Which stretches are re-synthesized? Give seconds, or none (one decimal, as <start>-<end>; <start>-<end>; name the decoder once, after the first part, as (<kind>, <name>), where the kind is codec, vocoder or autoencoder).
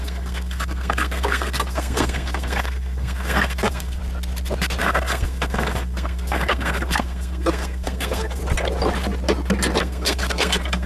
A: 0.0-4.0 (codec, SNAC); 4.8-8.4; 9.8-10.9